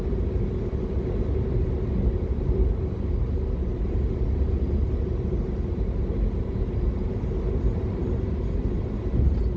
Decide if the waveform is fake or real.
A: real